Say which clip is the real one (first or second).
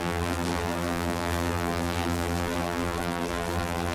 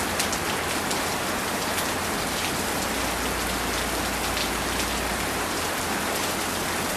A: second